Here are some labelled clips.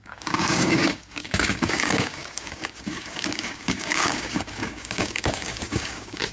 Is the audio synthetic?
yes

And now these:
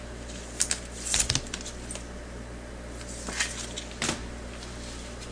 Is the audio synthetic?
no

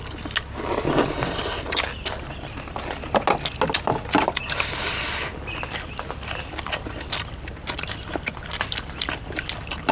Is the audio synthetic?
no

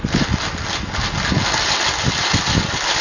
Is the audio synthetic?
no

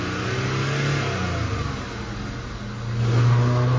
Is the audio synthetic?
no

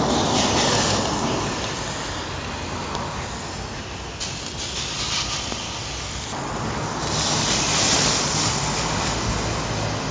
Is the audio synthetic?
no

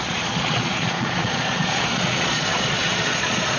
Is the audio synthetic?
yes